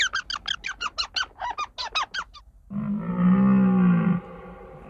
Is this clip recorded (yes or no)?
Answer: yes